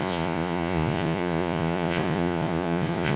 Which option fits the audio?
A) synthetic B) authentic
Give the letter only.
A